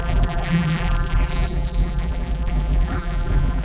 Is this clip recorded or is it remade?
remade